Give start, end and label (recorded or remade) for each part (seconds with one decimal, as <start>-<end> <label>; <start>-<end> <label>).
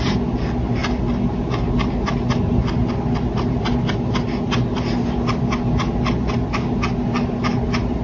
0.0-8.0 recorded